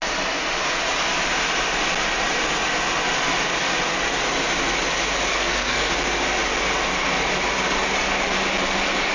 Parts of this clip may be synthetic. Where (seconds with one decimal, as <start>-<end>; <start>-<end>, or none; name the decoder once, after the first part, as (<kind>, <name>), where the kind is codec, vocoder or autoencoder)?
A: 5.3-5.9 (codec, SNAC)